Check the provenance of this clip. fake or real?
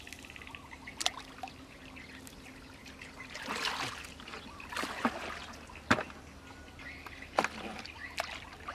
real